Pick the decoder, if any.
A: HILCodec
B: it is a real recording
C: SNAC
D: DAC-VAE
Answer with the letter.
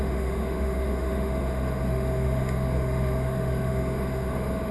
D